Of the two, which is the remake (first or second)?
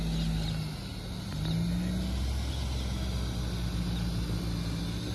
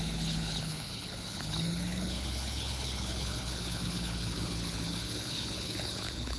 second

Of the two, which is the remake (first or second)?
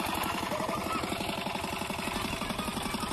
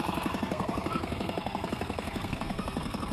second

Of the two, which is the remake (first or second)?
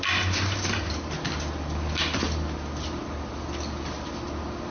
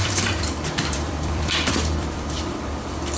second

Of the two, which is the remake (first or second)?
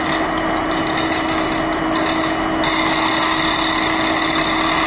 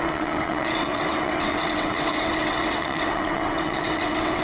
second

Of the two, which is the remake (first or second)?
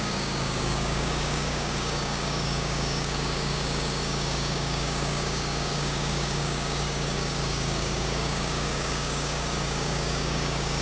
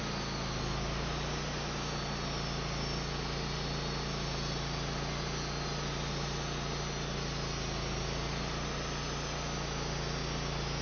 first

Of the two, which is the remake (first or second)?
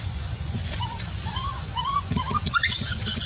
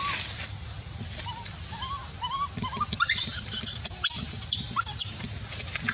first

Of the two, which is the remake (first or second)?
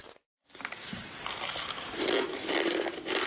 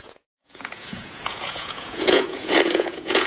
second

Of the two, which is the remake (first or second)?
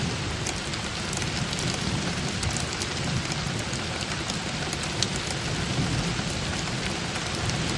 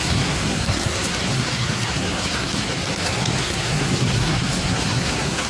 second